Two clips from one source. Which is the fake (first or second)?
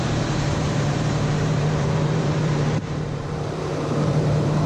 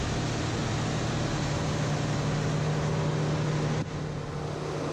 first